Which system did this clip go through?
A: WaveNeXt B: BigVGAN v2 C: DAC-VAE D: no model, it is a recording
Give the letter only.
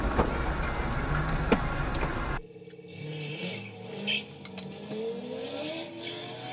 D